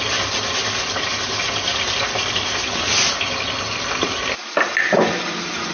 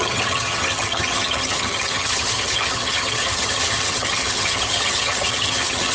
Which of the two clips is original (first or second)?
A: first